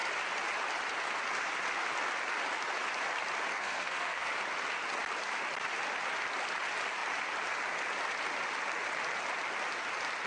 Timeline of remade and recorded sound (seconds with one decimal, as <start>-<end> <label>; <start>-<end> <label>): 0.0-3.5 recorded; 3.5-4.3 remade; 4.3-10.3 recorded